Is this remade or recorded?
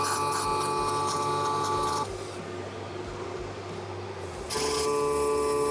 recorded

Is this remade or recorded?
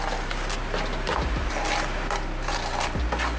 recorded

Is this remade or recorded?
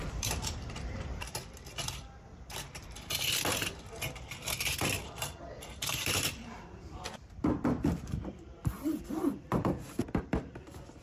remade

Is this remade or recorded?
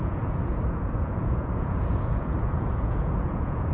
remade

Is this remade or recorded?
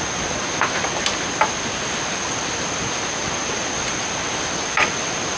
recorded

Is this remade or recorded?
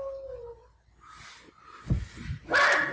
recorded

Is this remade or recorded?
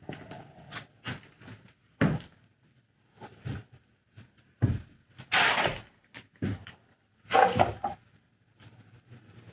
recorded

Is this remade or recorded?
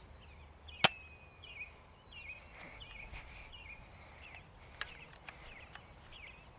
recorded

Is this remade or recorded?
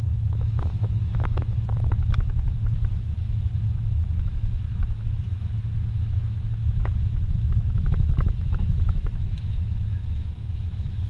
remade